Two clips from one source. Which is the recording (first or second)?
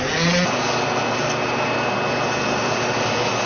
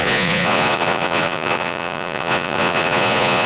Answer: first